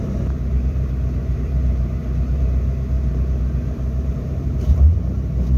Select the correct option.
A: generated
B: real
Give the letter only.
A